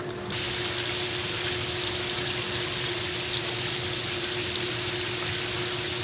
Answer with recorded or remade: recorded